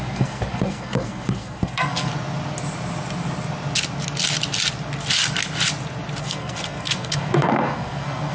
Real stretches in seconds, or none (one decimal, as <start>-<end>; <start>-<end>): 2.1-6.2